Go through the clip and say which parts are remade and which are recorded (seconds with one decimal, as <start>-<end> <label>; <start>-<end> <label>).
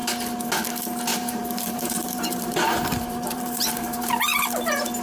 0.0-1.1 recorded; 1.1-4.1 remade; 4.1-5.0 recorded